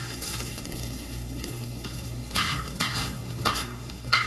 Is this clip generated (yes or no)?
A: yes